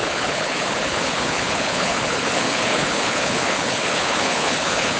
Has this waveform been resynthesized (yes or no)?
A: yes